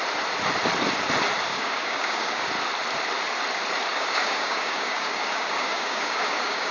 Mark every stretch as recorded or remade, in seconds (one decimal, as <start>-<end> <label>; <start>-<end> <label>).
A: 0.0-1.5 recorded; 1.5-2.5 remade; 2.5-3.9 recorded; 3.9-6.7 remade